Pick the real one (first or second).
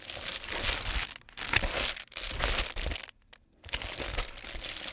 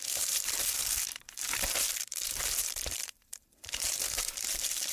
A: first